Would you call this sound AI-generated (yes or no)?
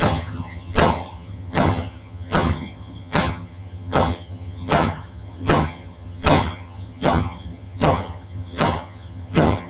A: yes